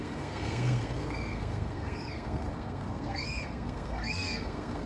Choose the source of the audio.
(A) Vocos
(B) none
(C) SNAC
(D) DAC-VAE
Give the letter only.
C